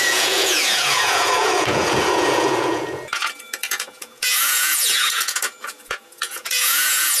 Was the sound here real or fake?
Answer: fake